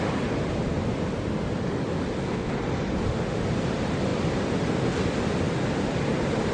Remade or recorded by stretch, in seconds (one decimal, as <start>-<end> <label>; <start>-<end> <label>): 0.0-6.5 recorded